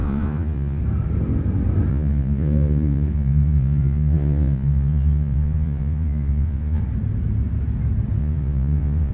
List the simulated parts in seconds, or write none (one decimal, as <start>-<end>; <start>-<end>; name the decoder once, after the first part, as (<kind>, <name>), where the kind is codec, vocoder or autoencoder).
0.0-0.8 (vocoder, Vocos); 1.9-6.8; 8.2-9.1